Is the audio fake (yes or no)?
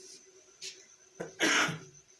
no